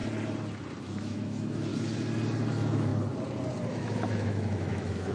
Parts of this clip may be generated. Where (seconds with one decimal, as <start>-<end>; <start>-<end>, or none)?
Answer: 0.8-1.7; 2.5-2.9; 3.7-5.1